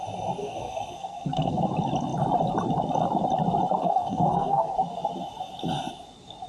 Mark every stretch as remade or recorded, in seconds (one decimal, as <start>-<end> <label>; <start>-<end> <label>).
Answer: 0.0-0.4 recorded; 0.4-1.6 remade; 1.6-3.8 recorded; 3.8-4.7 remade; 4.7-6.5 recorded